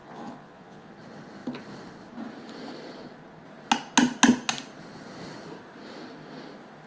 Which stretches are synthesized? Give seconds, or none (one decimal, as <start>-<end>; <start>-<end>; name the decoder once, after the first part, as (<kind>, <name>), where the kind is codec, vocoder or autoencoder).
0.0-0.9 (vocoder, Vocos)